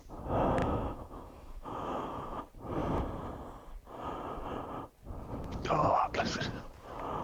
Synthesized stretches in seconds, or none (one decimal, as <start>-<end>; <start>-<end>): 0.6-2.4